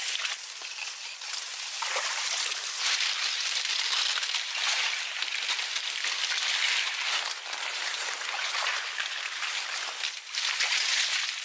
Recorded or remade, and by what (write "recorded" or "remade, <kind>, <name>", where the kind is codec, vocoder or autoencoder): recorded